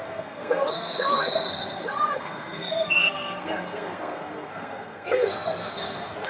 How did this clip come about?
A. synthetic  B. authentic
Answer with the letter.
A